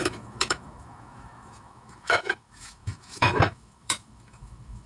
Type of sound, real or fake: fake